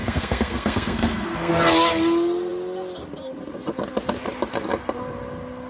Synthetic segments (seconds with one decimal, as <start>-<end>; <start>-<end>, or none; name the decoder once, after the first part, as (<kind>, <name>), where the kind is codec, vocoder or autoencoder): 0.0-1.5 (codec, SNAC)